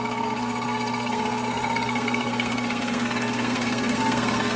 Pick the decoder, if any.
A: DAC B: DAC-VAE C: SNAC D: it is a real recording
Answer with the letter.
C